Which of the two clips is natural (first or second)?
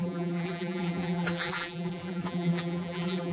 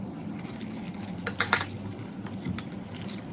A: second